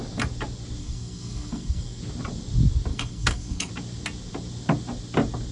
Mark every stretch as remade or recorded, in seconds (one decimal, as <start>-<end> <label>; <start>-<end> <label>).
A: 0.0-0.8 recorded; 0.8-2.0 remade; 2.0-2.9 recorded; 2.9-3.7 remade; 3.7-5.5 recorded